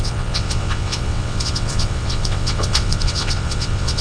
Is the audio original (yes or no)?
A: no